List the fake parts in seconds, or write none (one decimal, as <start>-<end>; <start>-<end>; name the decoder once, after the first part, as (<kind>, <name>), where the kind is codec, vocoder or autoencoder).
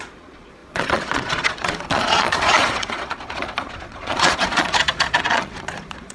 0.0-6.1 (vocoder, Vocos)